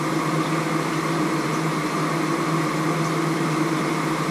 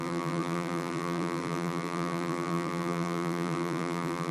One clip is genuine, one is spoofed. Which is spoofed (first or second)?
second